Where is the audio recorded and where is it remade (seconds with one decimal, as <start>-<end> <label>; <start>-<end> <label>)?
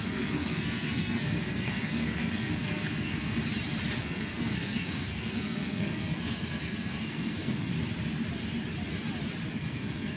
0.0-3.4 remade; 3.4-4.0 recorded; 4.0-7.7 remade; 7.7-9.5 recorded; 9.5-10.2 remade